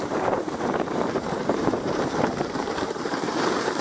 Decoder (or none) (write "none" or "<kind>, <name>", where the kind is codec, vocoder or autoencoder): vocoder, BigVGAN v2